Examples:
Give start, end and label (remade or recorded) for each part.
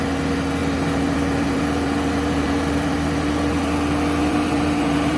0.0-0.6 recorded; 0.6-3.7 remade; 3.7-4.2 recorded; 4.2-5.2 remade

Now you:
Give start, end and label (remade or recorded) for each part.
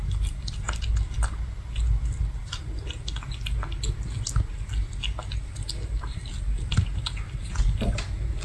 0.0-8.4 recorded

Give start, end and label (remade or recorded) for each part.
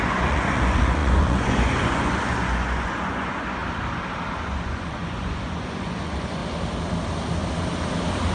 0.0-3.6 remade; 3.6-4.4 recorded; 4.4-6.4 remade; 6.4-8.3 recorded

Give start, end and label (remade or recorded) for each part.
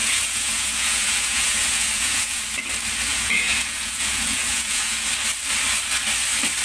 0.0-2.4 remade; 2.4-3.1 recorded; 3.1-5.1 remade; 5.1-6.6 recorded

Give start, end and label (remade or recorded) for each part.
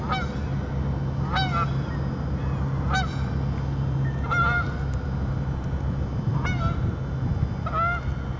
0.0-8.4 recorded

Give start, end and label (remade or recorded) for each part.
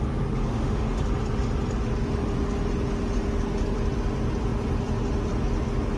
0.0-0.5 recorded; 0.5-1.0 remade; 1.0-6.0 recorded